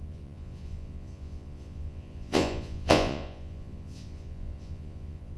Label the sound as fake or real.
fake